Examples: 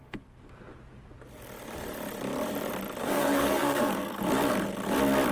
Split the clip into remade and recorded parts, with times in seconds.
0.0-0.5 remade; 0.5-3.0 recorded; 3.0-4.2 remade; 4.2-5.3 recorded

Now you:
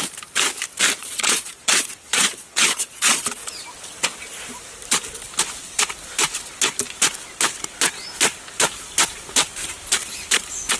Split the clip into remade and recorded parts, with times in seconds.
0.0-1.0 recorded; 1.0-3.6 remade; 3.6-10.8 recorded